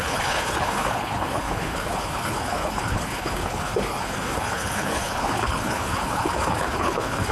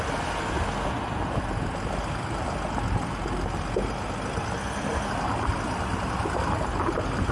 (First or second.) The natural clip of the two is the second